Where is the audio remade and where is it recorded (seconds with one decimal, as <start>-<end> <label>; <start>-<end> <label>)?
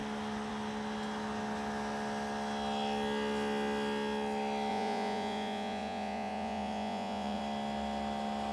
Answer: 0.0-4.7 recorded; 4.7-7.4 remade; 7.4-8.5 recorded